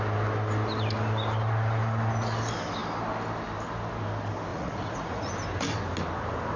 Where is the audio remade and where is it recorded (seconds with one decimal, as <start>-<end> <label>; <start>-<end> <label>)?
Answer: 0.0-4.5 recorded; 4.5-5.3 remade; 5.3-6.6 recorded